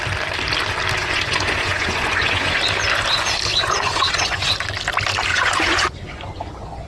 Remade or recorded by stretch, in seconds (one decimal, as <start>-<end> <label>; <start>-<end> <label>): 0.0-1.0 recorded; 1.0-2.6 remade; 2.6-3.5 recorded; 3.5-4.5 remade; 4.5-5.3 recorded; 5.3-6.9 remade